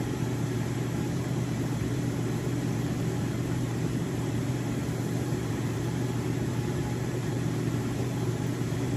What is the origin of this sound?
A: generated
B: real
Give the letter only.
A